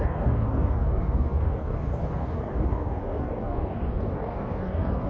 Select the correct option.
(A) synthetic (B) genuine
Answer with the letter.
A